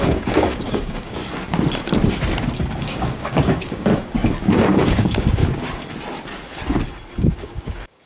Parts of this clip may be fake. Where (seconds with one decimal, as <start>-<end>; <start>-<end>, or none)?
0.0-1.2; 2.8-3.9; 4.5-5.4; 7.2-8.1